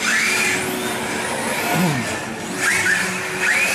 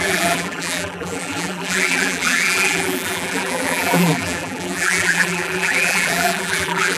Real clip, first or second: first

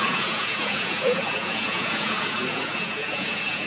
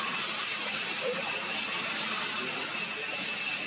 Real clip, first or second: second